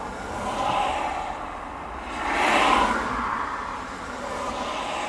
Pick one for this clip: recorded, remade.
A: recorded